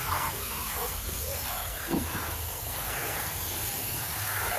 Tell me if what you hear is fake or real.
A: fake